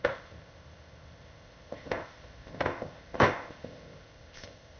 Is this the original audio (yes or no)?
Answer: no